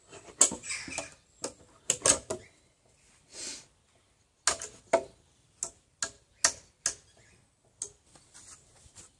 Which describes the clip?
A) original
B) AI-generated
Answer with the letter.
A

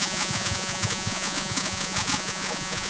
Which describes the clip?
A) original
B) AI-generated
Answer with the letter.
B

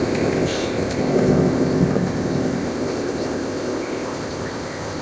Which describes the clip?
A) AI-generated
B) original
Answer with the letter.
A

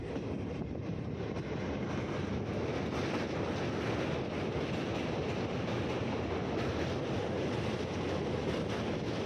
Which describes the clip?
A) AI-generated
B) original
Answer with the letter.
B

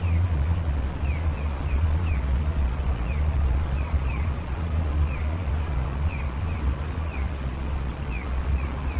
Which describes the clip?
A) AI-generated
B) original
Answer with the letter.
A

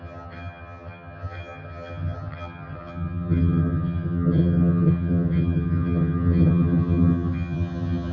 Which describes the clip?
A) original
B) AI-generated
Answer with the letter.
B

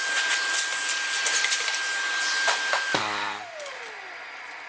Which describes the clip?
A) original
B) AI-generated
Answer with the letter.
A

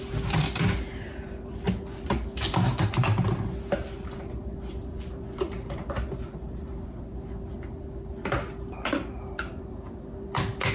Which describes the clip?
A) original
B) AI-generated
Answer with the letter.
A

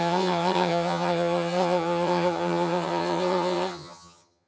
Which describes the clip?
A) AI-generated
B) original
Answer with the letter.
A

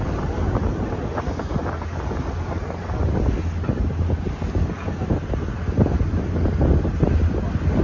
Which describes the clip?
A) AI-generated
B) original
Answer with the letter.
B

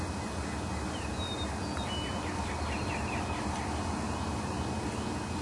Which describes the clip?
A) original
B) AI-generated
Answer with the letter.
A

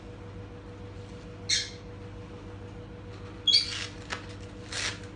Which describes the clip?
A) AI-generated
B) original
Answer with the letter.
B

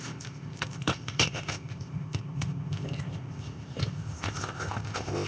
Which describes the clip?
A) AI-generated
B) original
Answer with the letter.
A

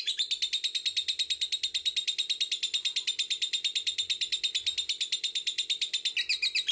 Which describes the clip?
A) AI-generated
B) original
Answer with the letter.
B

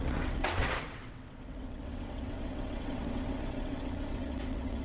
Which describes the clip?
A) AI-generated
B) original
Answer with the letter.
A